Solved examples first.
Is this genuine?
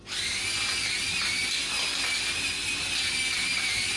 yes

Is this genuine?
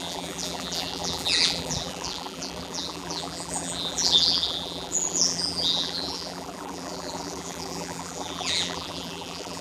no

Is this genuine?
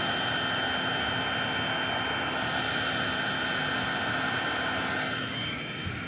yes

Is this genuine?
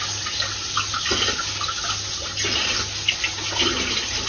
yes